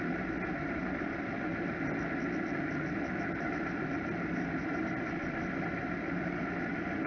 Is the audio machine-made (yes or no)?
no